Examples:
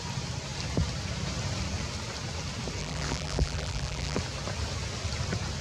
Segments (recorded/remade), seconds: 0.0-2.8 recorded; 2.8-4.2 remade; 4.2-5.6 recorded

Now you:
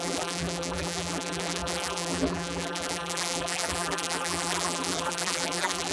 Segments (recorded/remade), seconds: 0.0-5.9 remade

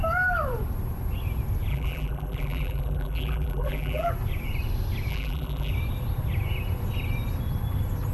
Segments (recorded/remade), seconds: 0.0-1.7 recorded; 1.7-4.1 remade; 4.1-5.1 recorded; 5.1-5.7 remade; 5.7-8.1 recorded

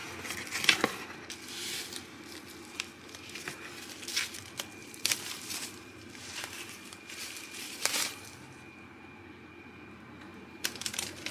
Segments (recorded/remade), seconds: 0.0-4.8 recorded; 4.8-8.2 remade; 8.2-10.3 recorded; 10.3-11.3 remade

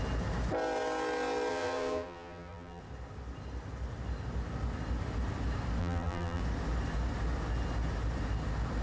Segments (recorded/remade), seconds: 0.0-1.5 recorded; 1.5-2.8 remade; 2.8-5.8 recorded; 5.8-6.4 remade; 6.4-8.8 recorded

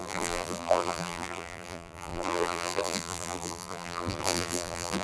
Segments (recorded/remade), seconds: 0.0-5.0 remade

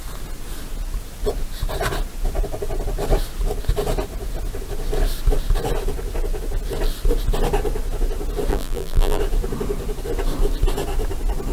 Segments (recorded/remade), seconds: 0.0-8.5 recorded; 8.5-9.2 remade; 9.2-11.5 recorded

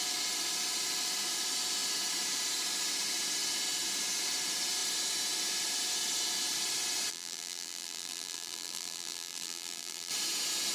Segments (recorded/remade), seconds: 0.0-7.1 recorded; 7.1-10.1 remade; 10.1-10.7 recorded